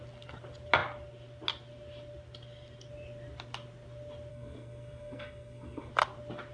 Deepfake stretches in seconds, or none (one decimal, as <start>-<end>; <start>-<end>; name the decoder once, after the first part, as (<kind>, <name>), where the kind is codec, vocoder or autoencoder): 4.3-5.9 (codec, SNAC)